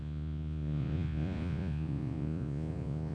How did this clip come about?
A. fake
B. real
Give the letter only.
A